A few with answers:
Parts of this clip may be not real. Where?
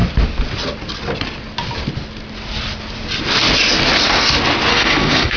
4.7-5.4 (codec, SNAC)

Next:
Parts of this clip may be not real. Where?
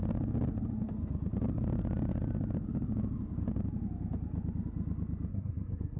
5.3-6.0 (codec, SNAC)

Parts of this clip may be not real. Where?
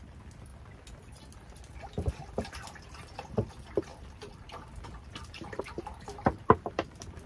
0.0-0.5 (vocoder, BigVGAN v2); 2.1-7.3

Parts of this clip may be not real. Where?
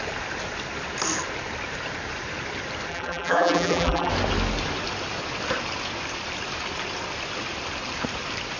2.9-4.1 (vocoder, BigVGAN v2)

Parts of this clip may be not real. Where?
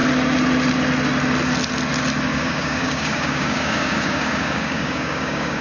2.3-5.6 (codec, DAC)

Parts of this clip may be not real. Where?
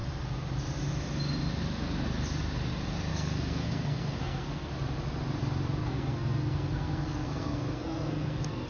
3.1-4.7 (codec, SNAC); 5.8-8.7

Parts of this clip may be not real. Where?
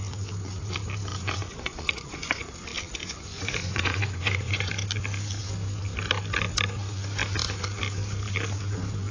1.1-2.5 (vocoder, Vocos); 3.0-4.7